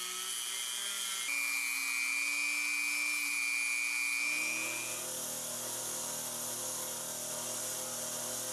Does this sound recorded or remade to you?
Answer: recorded